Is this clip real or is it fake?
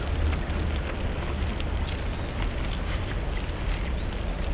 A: real